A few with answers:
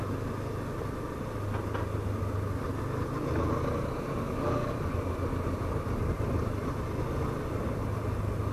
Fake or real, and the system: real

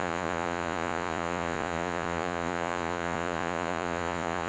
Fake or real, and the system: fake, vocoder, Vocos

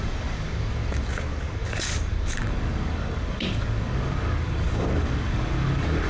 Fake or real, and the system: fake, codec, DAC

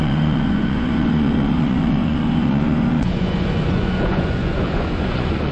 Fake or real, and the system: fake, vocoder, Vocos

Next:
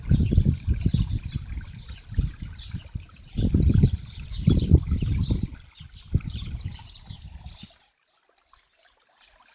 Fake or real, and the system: real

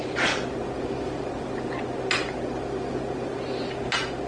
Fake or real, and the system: real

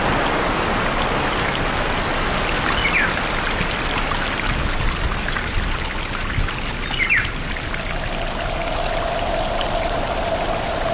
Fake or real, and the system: real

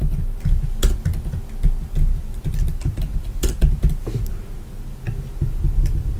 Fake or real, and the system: real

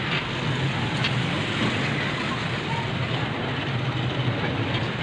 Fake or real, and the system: real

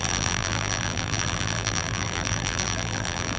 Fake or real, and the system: fake, vocoder, BigVGAN v2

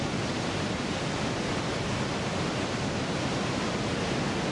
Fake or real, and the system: real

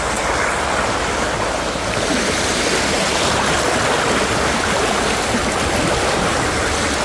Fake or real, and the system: real